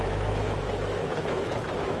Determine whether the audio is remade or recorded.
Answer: remade